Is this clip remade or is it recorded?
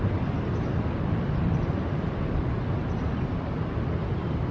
recorded